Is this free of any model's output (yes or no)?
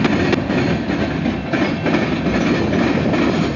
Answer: yes